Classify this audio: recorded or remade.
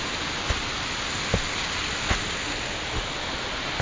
recorded